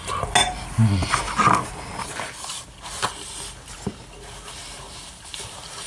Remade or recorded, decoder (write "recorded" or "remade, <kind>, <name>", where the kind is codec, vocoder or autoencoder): recorded